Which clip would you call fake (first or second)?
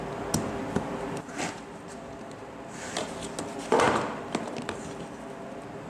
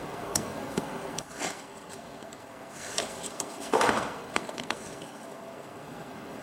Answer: second